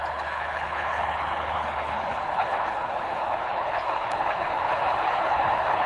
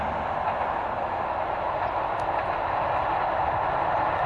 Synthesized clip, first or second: first